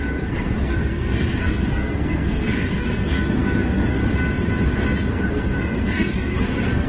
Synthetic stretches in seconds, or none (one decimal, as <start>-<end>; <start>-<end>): 0.0-4.0; 5.1-6.9